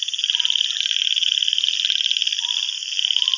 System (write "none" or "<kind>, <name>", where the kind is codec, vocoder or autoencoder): none